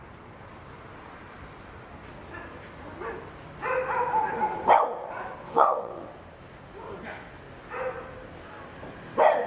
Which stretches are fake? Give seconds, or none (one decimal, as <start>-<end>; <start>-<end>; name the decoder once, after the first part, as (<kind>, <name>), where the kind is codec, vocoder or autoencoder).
5.4-6.1 (vocoder, WaveNeXt)